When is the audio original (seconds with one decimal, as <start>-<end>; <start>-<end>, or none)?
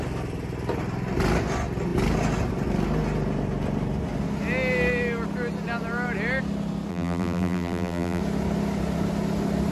0.0-6.9; 8.2-9.7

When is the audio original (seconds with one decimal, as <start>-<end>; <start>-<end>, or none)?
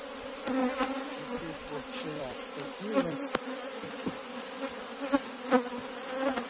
0.0-0.6; 1.2-1.6; 4.3-6.5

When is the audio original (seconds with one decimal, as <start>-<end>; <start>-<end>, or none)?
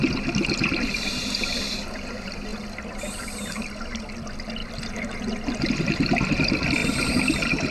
0.0-7.7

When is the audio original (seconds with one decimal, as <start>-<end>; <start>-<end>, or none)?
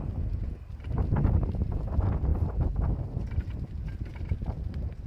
0.0-5.1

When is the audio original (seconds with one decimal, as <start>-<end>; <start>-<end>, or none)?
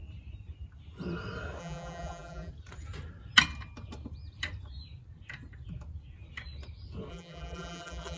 0.0-1.6; 2.5-7.1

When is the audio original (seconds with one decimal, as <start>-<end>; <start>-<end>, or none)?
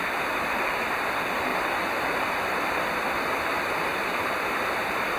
0.0-1.5; 3.0-3.9